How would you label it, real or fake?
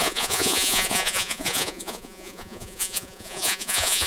fake